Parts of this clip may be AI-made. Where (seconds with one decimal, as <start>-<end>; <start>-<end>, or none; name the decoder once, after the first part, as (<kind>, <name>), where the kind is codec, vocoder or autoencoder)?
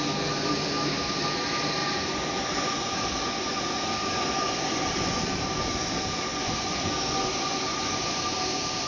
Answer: 1.8-5.2 (vocoder, Vocos); 6.3-8.2